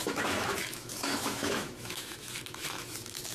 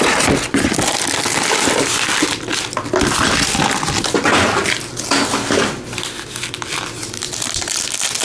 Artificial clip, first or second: first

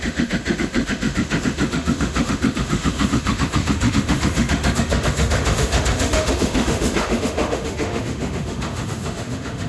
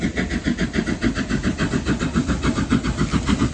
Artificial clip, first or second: first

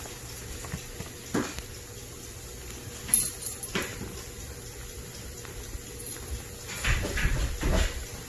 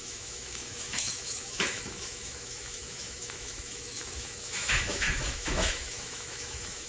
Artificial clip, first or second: second